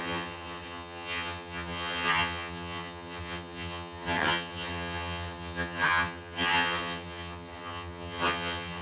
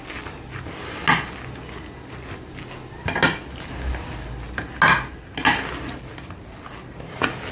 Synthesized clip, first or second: first